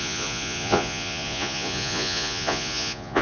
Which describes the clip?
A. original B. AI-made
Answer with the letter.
B